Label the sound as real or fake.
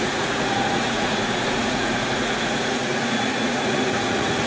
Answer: fake